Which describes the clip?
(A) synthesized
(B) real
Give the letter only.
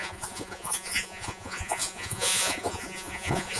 A